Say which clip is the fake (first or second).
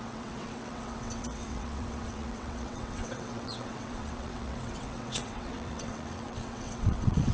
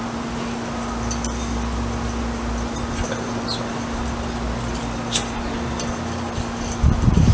first